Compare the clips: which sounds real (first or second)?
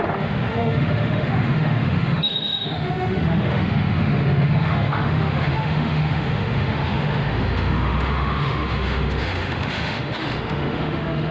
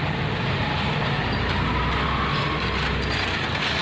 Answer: second